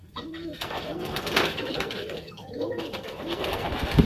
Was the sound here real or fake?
fake